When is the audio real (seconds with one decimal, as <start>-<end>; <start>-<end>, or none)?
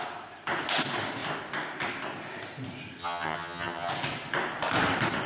0.0-3.0; 3.9-5.3